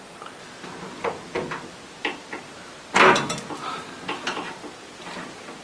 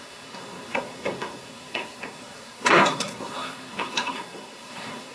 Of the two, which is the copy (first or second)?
second